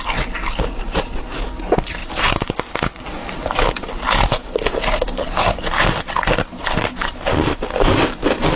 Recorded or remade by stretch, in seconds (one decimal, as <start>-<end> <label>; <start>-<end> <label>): 0.0-8.6 recorded